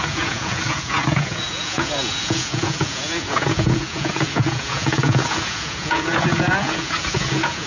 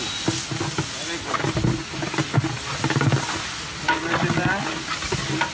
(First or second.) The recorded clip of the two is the second